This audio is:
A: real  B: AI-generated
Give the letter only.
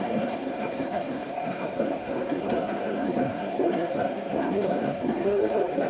B